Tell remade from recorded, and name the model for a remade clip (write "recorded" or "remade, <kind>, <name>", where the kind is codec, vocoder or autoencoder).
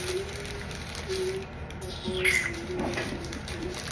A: recorded